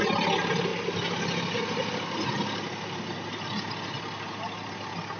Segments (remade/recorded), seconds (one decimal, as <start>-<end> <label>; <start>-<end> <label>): 0.0-5.2 recorded